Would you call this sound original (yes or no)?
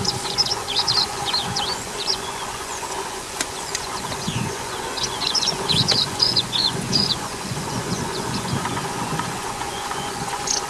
no